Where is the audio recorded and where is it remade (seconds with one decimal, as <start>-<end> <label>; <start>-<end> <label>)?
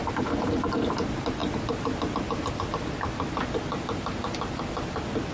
0.0-5.3 recorded